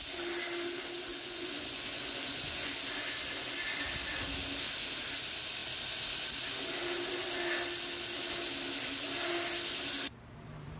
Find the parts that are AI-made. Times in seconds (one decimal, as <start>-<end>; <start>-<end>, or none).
1.1-2.7